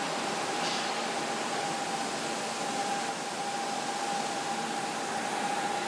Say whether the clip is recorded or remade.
recorded